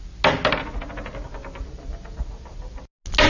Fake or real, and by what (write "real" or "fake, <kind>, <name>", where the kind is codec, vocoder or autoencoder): real